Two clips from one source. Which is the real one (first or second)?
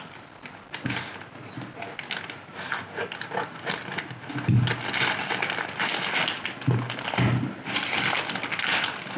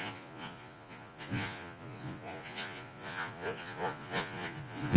first